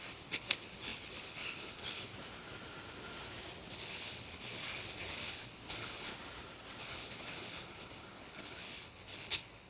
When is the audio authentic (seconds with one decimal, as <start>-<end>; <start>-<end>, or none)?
2.1-3.7; 6.1-6.8